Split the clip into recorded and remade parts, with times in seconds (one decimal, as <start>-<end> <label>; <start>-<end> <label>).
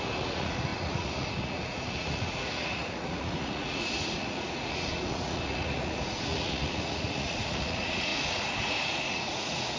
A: 0.0-9.8 remade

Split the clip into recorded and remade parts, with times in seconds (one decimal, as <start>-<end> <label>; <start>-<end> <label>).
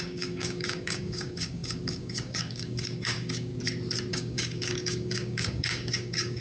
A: 0.0-3.5 remade; 3.5-4.1 recorded; 4.1-6.4 remade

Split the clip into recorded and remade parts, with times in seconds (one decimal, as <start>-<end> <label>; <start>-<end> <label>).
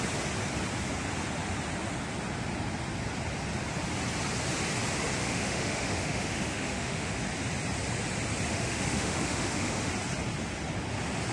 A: 0.0-5.2 recorded; 5.2-7.2 remade; 7.2-8.5 recorded; 8.5-9.9 remade; 9.9-11.3 recorded